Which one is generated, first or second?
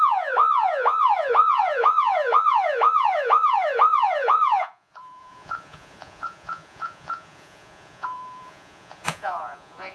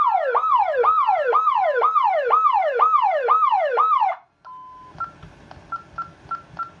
first